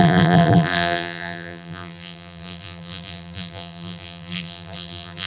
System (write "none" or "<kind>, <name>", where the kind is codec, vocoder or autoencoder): vocoder, BigVGAN v2